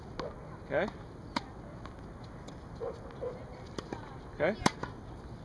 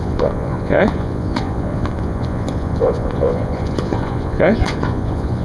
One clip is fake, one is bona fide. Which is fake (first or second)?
second